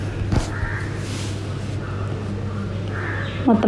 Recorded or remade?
recorded